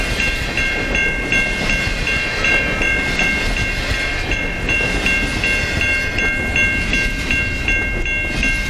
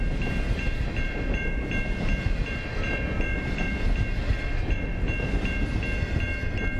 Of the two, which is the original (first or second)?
first